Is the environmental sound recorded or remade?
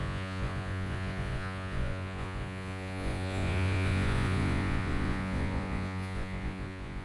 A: remade